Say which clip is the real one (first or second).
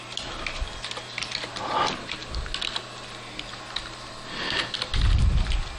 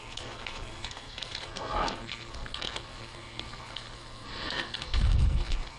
first